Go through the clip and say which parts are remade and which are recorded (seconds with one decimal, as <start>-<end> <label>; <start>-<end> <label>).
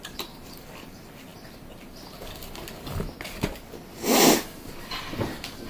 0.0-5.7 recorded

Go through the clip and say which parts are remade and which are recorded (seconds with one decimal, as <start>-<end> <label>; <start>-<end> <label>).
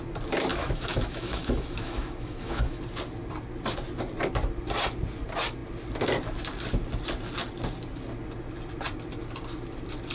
0.0-0.5 recorded; 0.5-2.8 remade; 2.8-10.1 recorded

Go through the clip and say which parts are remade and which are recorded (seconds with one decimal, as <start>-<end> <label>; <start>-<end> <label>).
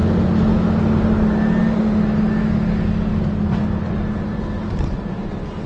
0.0-5.7 recorded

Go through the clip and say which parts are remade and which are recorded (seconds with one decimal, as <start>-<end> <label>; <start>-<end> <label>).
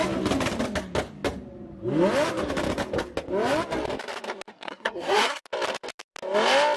0.0-4.5 recorded; 4.5-5.4 remade; 5.4-6.8 recorded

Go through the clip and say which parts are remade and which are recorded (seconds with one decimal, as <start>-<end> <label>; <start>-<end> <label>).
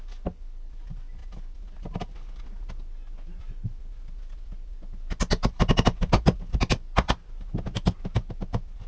0.0-8.9 recorded